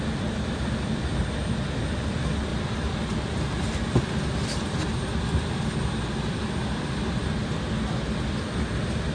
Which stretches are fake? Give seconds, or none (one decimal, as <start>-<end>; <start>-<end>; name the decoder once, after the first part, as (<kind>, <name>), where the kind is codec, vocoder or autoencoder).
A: none